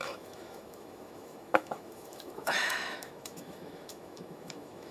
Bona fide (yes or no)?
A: no